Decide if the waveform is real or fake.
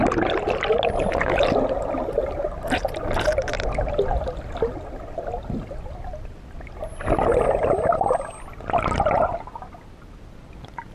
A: real